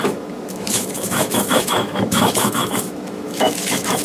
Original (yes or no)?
no